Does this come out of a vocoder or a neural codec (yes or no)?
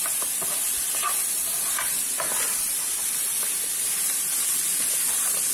yes